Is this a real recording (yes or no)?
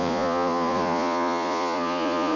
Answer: no